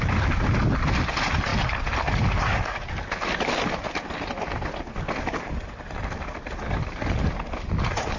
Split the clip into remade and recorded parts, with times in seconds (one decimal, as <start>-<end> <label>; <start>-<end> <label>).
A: 0.0-8.2 recorded

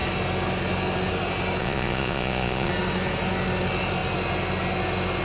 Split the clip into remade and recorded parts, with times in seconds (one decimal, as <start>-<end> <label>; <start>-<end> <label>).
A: 0.0-1.6 recorded; 1.6-2.7 remade; 2.7-5.2 recorded

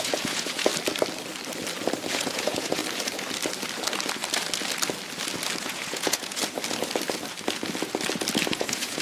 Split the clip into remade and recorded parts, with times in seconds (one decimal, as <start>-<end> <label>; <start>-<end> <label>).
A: 0.0-0.7 remade; 0.7-2.1 recorded; 2.1-2.8 remade; 2.8-5.6 recorded; 5.6-6.4 remade; 6.4-8.5 recorded; 8.5-9.0 remade

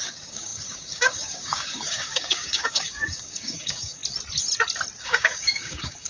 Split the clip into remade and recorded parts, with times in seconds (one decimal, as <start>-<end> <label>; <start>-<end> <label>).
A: 0.0-4.0 remade; 4.0-5.0 recorded; 5.0-6.1 remade

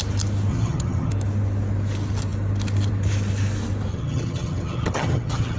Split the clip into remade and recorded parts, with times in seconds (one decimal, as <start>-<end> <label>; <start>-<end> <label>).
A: 0.0-0.5 recorded; 0.5-1.1 remade; 1.1-3.9 recorded; 3.9-5.6 remade

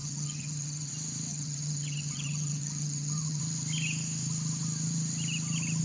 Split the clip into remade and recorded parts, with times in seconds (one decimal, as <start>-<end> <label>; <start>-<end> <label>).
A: 0.0-0.9 remade; 0.9-1.3 recorded; 1.3-3.4 remade; 3.4-5.8 recorded